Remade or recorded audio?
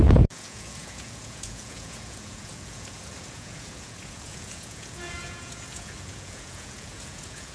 remade